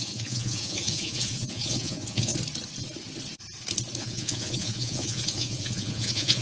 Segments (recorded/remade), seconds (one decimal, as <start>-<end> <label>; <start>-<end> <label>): 0.0-2.3 remade; 2.3-4.0 recorded; 4.0-6.4 remade